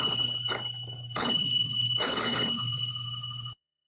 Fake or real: fake